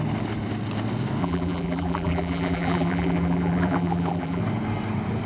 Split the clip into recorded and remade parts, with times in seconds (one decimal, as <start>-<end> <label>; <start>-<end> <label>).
0.0-1.2 recorded; 1.2-4.4 remade; 4.4-5.3 recorded